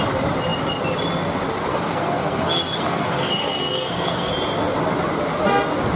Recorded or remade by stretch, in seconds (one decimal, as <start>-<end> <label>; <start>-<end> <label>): 0.0-1.7 recorded; 1.7-4.3 remade; 4.3-6.0 recorded